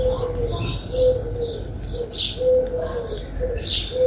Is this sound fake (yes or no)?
no